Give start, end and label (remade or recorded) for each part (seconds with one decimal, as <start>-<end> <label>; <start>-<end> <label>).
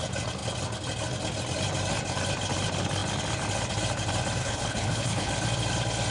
0.0-4.4 recorded; 4.4-5.3 remade; 5.3-6.1 recorded